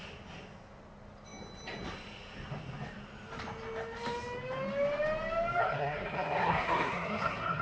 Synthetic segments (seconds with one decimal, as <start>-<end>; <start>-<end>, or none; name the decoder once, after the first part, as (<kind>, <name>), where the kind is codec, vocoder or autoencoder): 5.6-7.6 (codec, SNAC)

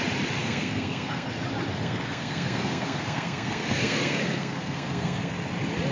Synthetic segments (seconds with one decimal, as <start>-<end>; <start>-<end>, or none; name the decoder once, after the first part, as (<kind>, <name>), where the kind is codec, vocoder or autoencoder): 0.4-1.3 (codec, SNAC); 1.8-5.3

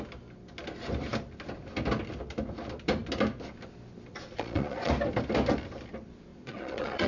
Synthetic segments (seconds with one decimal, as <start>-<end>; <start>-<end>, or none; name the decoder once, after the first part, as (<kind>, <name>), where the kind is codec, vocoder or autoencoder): 4.3-4.9 (vocoder, Vocos); 6.3-7.1

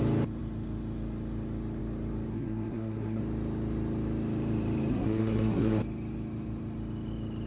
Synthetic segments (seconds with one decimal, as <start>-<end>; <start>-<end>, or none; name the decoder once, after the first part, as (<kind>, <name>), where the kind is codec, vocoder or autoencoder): 2.3-3.2 (codec, SNAC); 4.9-5.8